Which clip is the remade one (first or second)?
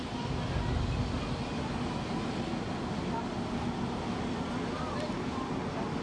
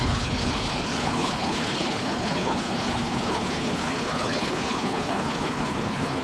second